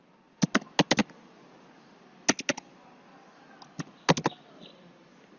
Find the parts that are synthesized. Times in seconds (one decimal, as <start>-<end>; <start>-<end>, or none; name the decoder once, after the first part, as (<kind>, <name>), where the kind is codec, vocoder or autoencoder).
none